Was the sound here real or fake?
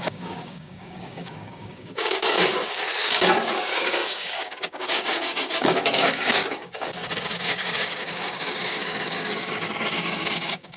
fake